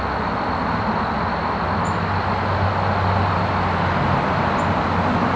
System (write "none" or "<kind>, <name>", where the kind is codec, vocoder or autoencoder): none